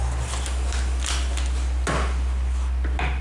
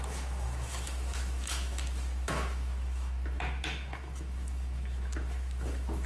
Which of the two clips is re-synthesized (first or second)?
second